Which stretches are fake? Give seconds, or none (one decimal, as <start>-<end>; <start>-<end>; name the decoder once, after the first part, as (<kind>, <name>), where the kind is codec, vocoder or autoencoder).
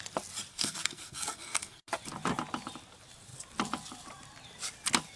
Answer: 0.5-1.9 (codec, SNAC)